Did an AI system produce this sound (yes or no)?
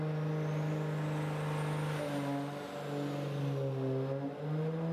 no